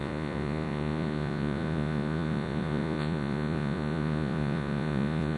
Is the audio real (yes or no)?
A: no